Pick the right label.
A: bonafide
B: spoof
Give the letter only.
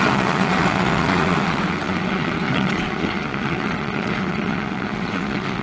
B